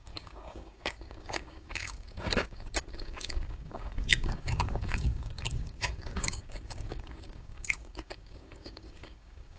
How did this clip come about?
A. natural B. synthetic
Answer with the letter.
B